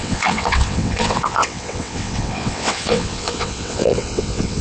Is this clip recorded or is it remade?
remade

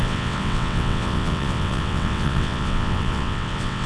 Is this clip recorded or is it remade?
remade